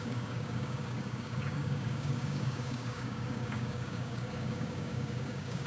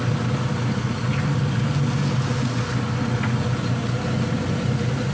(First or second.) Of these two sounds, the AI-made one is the first